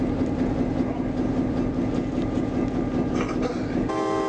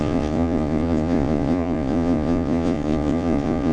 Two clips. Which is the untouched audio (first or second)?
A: first